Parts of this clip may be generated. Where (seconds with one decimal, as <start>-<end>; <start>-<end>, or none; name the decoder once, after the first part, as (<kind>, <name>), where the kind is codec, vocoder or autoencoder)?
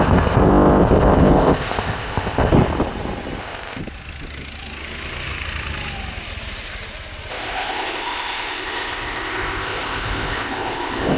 0.0-2.5 (codec, ZipCodec); 3.4-3.8; 7.3-11.2